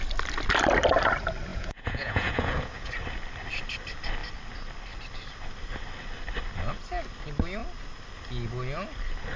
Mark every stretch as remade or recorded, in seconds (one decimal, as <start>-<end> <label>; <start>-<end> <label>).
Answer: 0.0-1.5 recorded; 1.5-2.9 remade; 2.9-9.4 recorded